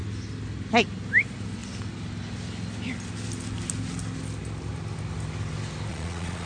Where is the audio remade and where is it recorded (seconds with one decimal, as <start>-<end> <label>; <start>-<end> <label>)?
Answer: 0.0-5.9 recorded; 5.9-6.5 remade